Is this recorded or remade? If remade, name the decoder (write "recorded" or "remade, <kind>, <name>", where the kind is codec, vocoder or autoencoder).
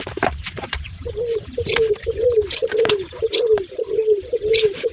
remade, vocoder, BigVGAN v2